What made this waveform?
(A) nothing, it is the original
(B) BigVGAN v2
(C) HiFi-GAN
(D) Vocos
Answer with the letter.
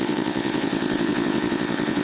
D